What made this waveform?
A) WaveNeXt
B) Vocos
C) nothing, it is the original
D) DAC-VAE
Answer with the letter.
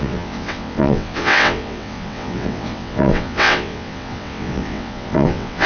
A